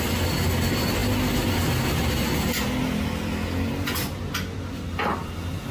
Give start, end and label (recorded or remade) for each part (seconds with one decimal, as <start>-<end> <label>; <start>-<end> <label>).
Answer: 0.0-5.7 recorded